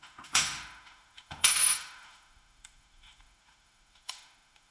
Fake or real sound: fake